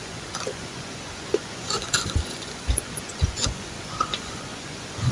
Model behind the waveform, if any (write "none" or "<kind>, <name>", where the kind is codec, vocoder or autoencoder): vocoder, Vocos